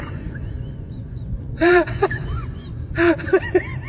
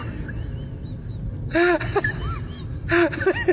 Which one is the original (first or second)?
second